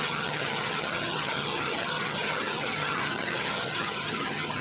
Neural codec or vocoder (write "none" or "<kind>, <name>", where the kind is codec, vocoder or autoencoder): vocoder, HiFi-GAN